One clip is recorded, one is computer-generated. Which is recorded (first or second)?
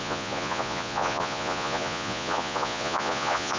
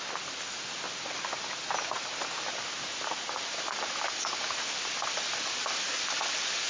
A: second